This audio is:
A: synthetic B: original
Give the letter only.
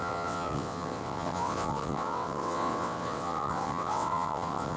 A